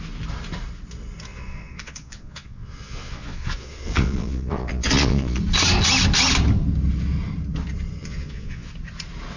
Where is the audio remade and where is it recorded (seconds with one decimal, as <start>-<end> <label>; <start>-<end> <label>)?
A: 0.0-1.3 recorded; 1.3-5.4 remade; 5.4-8.0 recorded; 8.0-8.7 remade; 8.7-9.4 recorded